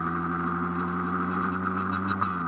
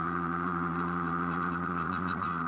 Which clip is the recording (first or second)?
first